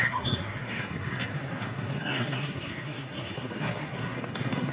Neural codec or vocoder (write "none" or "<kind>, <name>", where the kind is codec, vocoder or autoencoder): codec, SNAC